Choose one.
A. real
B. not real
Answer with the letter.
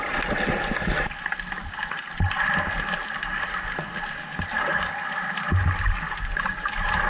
A